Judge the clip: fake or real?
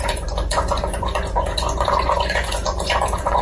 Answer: fake